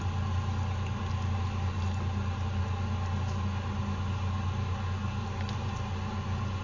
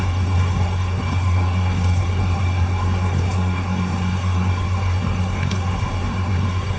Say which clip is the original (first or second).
first